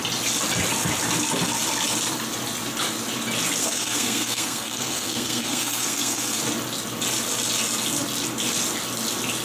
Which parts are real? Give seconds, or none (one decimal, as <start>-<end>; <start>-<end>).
0.0-3.6; 6.4-9.4